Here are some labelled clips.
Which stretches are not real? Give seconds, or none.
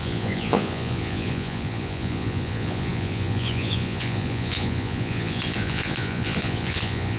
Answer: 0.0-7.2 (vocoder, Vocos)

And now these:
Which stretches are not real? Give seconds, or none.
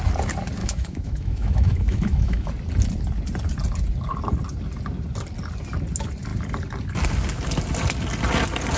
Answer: 0.6-2.5 (autoencoder, DAC-VAE)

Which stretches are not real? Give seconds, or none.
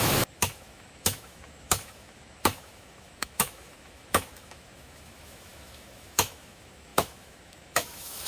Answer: 0.0-8.3 (autoencoder, DAC-VAE)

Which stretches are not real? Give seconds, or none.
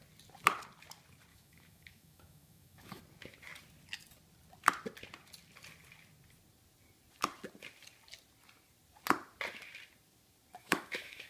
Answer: 1.3-3.0 (autoencoder, DAC-VAE); 10.6-11.3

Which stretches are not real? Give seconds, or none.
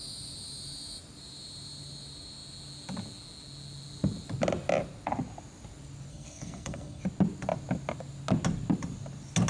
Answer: 6.1-7.0 (codec, SNAC)